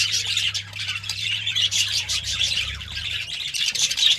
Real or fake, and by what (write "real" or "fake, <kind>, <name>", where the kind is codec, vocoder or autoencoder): fake, vocoder, BigVGAN v2